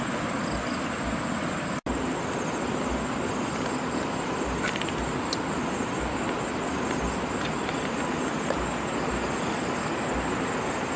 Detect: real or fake real